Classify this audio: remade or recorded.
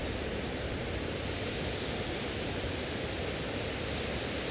recorded